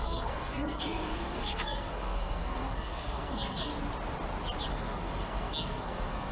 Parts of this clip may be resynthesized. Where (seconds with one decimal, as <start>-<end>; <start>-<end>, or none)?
0.0-3.7; 4.6-6.3